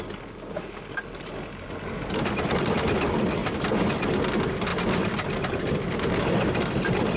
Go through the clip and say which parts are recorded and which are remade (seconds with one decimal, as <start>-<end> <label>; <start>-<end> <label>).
0.0-3.4 recorded; 3.4-4.3 remade; 4.3-7.2 recorded